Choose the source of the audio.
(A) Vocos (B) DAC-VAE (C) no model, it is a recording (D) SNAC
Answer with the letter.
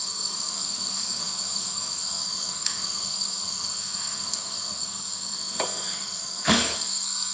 D